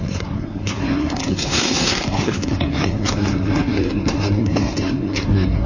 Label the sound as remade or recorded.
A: remade